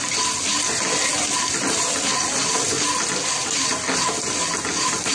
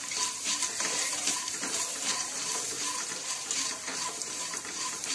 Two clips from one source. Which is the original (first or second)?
first